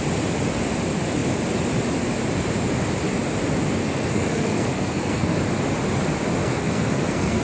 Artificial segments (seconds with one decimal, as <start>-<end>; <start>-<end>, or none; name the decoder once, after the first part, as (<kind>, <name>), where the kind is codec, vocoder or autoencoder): 3.8-5.4 (codec, SNAC); 6.4-7.4